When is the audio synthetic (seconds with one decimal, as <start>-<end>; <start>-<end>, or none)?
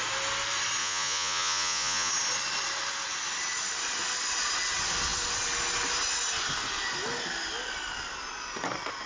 0.8-2.1